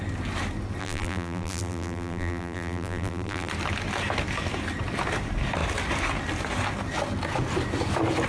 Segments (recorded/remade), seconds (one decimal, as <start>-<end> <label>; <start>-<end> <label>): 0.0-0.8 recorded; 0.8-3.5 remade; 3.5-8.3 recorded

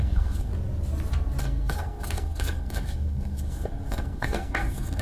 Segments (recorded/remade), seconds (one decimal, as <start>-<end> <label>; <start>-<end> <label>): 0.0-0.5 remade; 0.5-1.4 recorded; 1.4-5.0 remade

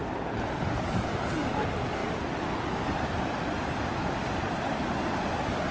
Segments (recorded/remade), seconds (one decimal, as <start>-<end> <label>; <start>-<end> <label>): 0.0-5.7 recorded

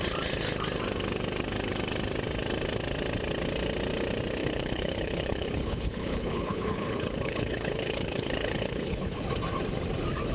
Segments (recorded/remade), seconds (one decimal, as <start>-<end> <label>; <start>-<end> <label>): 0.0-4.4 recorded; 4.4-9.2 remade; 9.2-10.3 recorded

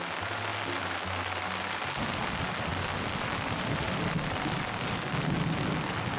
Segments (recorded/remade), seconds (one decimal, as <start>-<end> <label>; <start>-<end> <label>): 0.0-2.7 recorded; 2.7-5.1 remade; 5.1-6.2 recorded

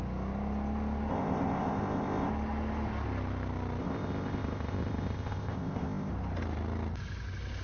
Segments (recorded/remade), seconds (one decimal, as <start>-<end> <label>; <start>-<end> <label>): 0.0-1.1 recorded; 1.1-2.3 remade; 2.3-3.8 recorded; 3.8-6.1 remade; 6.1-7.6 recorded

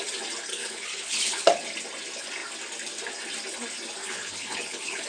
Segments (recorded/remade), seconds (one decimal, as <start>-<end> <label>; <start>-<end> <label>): 0.0-0.5 recorded; 0.5-1.5 remade; 1.5-4.0 recorded; 4.0-5.1 remade

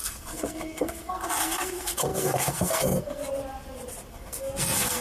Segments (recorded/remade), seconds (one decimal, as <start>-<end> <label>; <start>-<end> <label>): 0.0-3.2 remade; 3.2-4.1 recorded; 4.1-5.0 remade